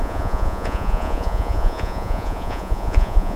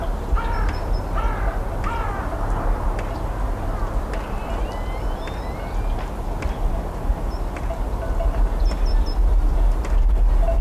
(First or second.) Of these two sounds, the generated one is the first